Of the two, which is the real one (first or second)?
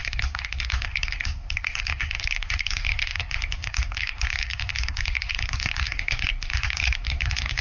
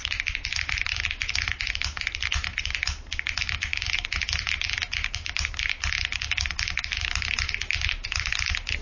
second